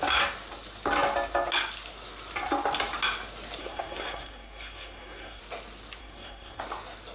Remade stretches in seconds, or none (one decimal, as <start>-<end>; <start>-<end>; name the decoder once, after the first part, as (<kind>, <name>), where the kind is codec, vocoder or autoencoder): 3.6-5.4 (codec, SNAC); 6.0-6.6